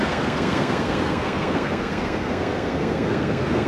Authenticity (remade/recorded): remade